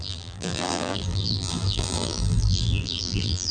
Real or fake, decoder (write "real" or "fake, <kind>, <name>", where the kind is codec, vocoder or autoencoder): fake, vocoder, BigVGAN v2